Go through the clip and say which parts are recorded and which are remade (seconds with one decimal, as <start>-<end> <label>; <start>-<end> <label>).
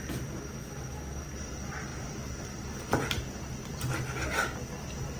0.0-5.2 recorded